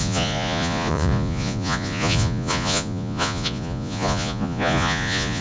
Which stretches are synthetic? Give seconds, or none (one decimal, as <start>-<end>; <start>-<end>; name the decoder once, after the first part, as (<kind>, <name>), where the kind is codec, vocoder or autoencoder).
0.0-5.4 (vocoder, Vocos)